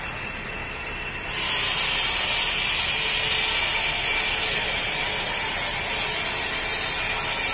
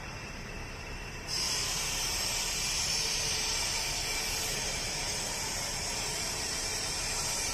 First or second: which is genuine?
first